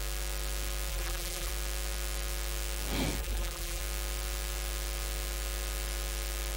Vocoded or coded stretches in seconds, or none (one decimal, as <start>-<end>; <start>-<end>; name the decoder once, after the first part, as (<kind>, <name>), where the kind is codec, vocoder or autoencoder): 0.9-1.5 (vocoder, BigVGAN v2); 3.2-3.8